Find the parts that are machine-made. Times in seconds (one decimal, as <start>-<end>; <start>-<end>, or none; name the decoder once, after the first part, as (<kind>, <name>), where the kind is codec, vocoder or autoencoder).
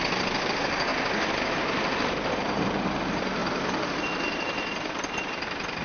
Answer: 0.0-0.9 (vocoder, BigVGAN v2); 1.5-5.8